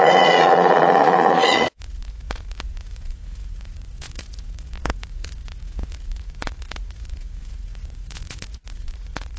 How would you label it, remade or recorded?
remade